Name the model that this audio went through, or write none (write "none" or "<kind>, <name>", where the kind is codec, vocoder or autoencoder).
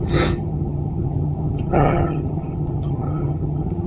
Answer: vocoder, HiFi-GAN